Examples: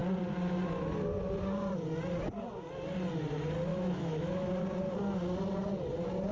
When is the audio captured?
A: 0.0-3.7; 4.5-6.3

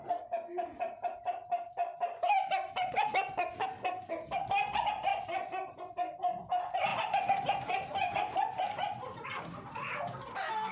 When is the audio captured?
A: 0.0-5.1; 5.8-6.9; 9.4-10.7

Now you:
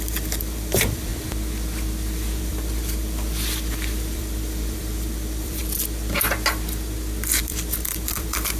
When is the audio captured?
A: 1.1-2.4; 5.6-7.4

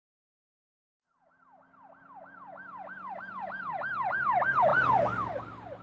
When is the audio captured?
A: 0.0-5.8